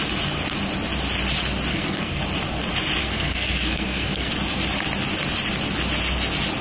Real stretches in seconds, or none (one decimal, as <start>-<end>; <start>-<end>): 0.0-1.7; 2.2-3.0; 4.3-6.6